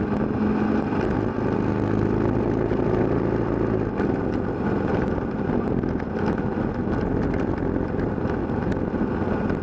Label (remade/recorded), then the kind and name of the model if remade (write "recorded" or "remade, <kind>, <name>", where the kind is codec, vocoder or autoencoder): recorded